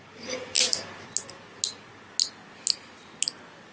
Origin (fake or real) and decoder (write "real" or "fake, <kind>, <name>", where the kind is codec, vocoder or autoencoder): real